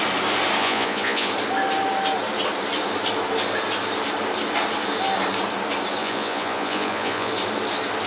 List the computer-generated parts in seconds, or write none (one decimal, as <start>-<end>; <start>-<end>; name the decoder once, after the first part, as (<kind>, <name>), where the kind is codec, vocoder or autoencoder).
0.6-1.3 (vocoder, Vocos); 6.0-7.3